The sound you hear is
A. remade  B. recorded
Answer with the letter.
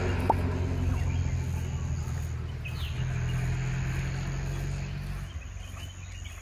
B